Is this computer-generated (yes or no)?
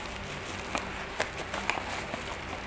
no